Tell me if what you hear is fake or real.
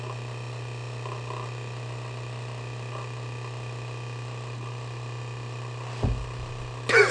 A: real